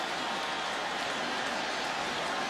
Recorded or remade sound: recorded